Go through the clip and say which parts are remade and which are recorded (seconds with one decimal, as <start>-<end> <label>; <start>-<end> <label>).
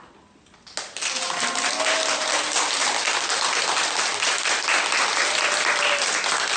0.0-6.6 recorded